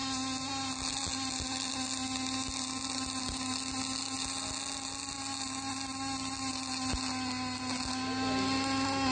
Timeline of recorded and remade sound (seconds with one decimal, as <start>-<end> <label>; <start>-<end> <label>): 0.0-9.1 recorded